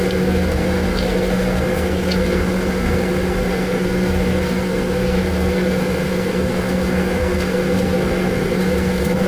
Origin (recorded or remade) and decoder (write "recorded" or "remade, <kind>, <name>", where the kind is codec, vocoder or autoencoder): remade, codec, SNAC